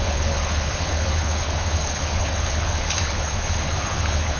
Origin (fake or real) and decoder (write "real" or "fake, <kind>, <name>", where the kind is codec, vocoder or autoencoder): fake, codec, HILCodec